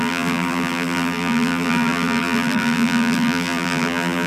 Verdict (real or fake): fake